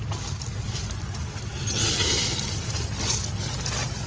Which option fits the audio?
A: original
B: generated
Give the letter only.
A